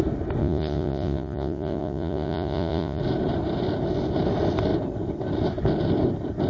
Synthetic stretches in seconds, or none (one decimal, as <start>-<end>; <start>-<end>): 0.4-3.0